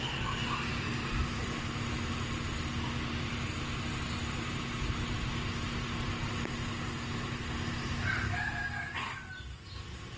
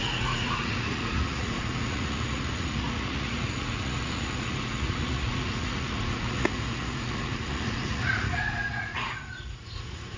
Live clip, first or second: first